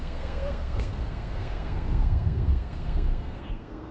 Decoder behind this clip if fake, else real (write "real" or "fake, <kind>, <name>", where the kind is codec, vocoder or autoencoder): fake, codec, SNAC